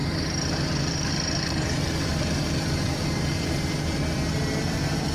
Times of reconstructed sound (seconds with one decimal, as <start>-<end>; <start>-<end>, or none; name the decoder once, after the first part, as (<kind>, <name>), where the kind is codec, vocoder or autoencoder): 1.1-5.1 (vocoder, BigVGAN v2)